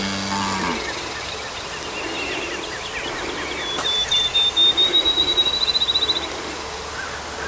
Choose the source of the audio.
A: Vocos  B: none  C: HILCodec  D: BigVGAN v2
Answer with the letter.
B